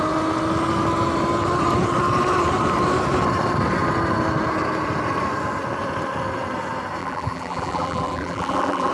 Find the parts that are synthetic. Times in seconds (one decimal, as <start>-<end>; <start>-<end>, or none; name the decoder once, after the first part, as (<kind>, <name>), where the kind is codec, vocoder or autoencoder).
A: 7.0-8.9 (vocoder, BigVGAN v2)